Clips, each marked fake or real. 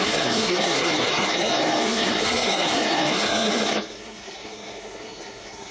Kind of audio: fake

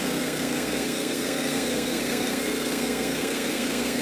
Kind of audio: fake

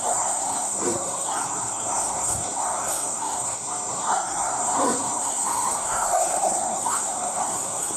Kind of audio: fake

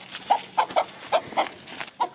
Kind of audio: real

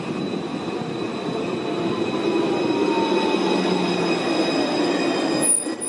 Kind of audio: real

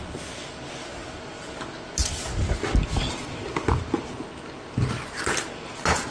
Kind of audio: real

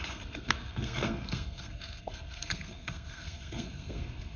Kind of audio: fake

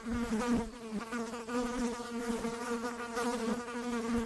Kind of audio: real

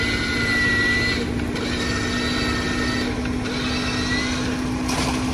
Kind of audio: real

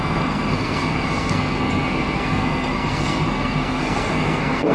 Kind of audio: fake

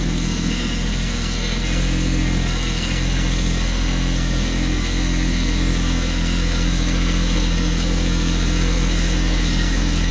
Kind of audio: fake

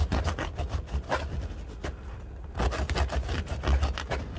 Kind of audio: real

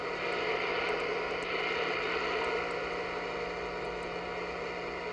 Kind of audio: real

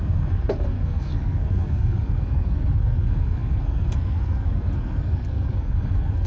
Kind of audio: fake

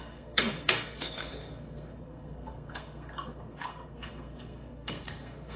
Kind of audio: fake